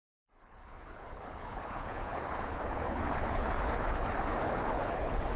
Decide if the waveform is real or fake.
fake